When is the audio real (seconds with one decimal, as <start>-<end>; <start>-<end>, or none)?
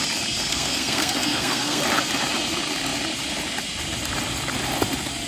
0.0-0.5; 1.8-5.3